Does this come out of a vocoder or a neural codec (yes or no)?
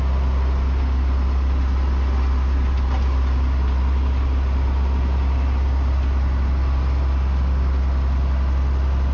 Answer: no